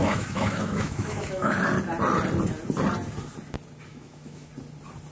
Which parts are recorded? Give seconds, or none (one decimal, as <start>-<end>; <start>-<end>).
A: 1.6-3.9; 4.5-5.1